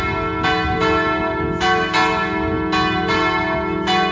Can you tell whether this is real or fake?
real